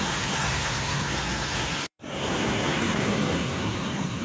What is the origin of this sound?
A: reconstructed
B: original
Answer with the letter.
A